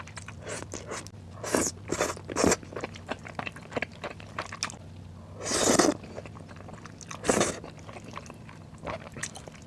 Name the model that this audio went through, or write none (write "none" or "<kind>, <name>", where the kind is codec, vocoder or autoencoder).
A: none